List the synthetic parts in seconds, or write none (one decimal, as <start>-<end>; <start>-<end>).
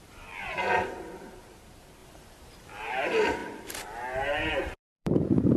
0.0-5.6